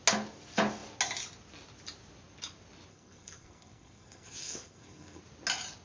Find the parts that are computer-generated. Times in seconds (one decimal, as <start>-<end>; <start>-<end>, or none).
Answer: 2.9-5.2